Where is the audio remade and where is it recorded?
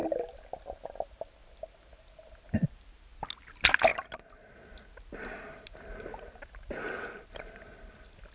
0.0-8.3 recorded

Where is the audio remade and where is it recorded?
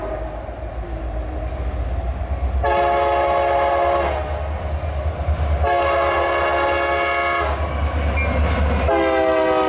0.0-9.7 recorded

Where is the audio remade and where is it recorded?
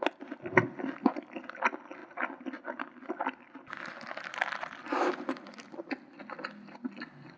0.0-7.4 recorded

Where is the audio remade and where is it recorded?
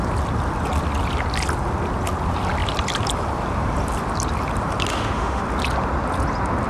0.0-4.9 recorded; 4.9-5.4 remade; 5.4-6.7 recorded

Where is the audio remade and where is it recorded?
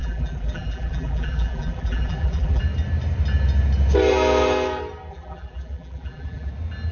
0.0-2.6 remade; 2.6-5.1 recorded; 5.1-6.5 remade; 6.5-6.9 recorded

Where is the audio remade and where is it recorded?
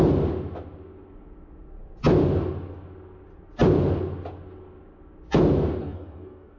0.0-5.8 recorded; 5.8-6.6 remade